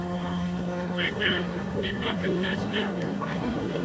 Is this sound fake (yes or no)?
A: yes